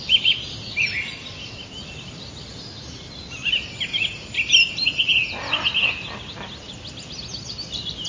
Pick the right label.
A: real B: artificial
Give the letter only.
A